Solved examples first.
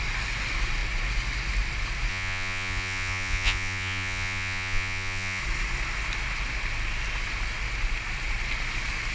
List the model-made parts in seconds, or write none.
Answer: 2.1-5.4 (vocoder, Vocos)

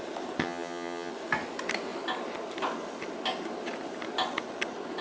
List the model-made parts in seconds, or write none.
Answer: 0.4-1.1 (vocoder, HiFi-GAN)

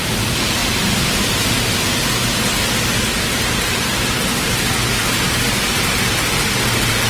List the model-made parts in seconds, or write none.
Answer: 3.0-5.0 (vocoder, BigVGAN v2)

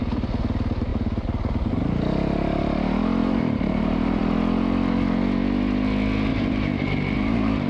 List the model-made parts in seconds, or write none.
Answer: 3.2-4.2 (vocoder, BigVGAN v2); 6.3-7.7